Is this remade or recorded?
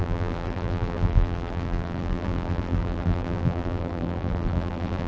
remade